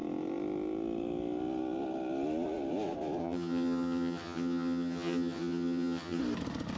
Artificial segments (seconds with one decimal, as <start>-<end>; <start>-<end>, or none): 3.2-6.2